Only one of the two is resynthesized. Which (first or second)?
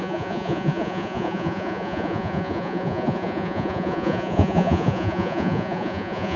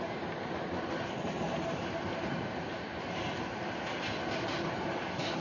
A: first